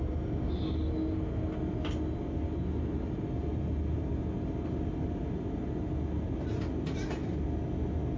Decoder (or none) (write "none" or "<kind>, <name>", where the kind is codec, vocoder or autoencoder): none